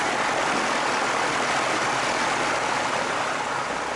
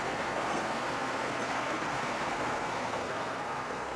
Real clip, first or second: first